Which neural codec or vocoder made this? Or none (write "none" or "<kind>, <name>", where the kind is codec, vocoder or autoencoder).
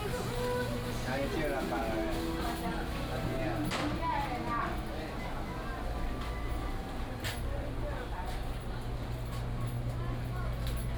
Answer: none